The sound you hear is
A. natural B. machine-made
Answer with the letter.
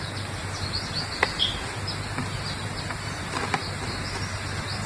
A